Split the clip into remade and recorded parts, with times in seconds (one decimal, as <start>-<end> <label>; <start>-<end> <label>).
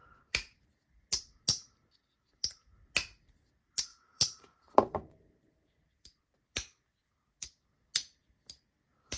0.0-0.7 remade; 0.7-3.9 recorded; 3.9-5.9 remade; 5.9-9.2 recorded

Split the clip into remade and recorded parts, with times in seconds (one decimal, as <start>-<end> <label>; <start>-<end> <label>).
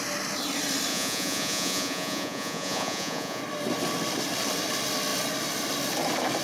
0.0-0.9 recorded; 0.9-3.4 remade; 3.4-6.4 recorded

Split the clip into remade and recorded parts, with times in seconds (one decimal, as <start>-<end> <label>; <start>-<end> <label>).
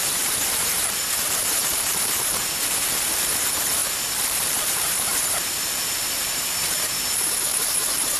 0.0-8.2 remade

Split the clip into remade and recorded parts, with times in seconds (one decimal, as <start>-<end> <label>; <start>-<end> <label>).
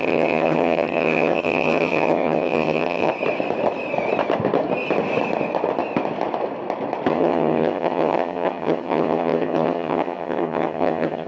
0.0-3.1 remade; 3.1-7.1 recorded; 7.1-11.3 remade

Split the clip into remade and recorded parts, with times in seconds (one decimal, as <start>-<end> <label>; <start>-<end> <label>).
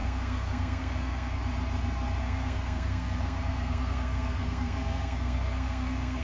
0.0-1.4 remade; 1.4-2.2 recorded; 2.2-6.2 remade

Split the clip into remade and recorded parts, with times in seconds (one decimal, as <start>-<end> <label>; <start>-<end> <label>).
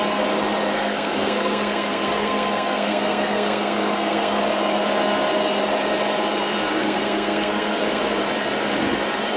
0.0-0.7 recorded; 0.7-4.4 remade; 4.4-6.8 recorded; 6.8-8.0 remade; 8.0-9.4 recorded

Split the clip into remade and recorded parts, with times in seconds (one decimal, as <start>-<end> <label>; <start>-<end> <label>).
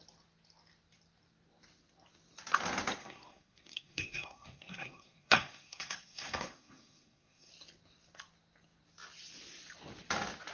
0.0-3.0 recorded; 3.0-7.5 remade; 7.5-10.5 recorded